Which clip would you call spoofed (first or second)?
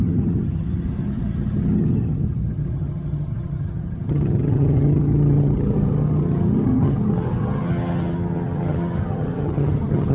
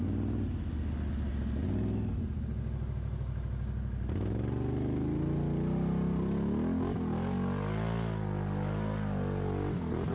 first